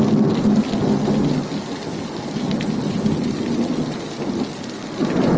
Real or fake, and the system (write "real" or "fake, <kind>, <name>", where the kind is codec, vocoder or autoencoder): real